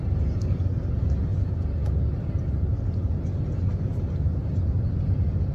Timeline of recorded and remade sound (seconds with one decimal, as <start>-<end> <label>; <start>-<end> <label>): 0.0-1.3 recorded; 1.3-1.9 remade; 1.9-5.5 recorded

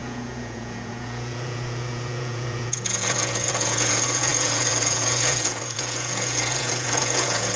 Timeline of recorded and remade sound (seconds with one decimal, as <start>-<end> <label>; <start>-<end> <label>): 0.0-7.6 remade

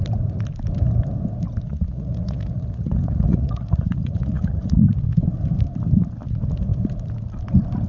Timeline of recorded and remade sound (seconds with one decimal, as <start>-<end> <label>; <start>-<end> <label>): 0.0-1.7 recorded; 1.7-5.0 remade; 5.0-7.9 recorded

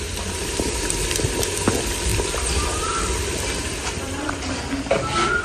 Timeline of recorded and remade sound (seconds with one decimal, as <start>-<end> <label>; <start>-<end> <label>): 0.0-5.4 recorded

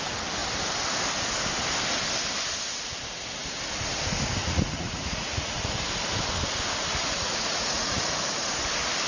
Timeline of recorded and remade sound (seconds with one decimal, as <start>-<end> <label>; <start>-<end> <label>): 0.0-4.4 recorded; 4.4-5.7 remade; 5.7-7.0 recorded; 7.0-8.1 remade; 8.1-9.1 recorded